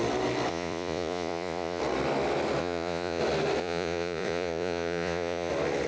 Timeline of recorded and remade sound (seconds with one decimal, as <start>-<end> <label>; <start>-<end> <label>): 0.0-0.5 recorded; 0.5-1.8 remade; 1.8-2.6 recorded; 2.6-3.2 remade; 3.2-3.6 recorded; 3.6-5.5 remade; 5.5-5.9 recorded